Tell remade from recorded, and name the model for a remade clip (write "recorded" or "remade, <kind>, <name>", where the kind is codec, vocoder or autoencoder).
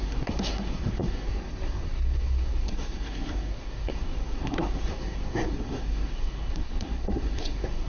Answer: remade, codec, SNAC